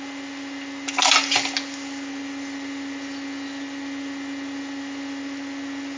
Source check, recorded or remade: recorded